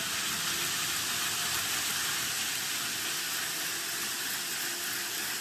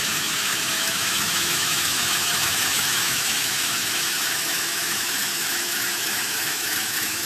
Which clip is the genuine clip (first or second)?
first